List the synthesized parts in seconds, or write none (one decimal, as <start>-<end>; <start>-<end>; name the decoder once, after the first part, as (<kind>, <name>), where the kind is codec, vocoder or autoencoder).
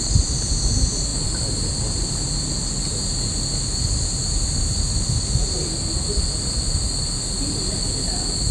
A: none